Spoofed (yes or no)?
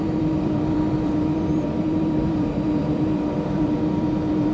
yes